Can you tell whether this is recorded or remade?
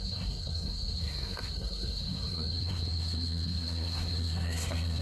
remade